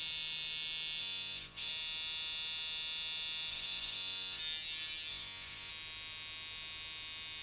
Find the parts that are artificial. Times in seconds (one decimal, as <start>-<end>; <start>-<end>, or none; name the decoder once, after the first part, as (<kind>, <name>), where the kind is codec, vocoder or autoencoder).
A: 1.0-1.7 (vocoder, Vocos); 3.5-4.4; 5.1-5.7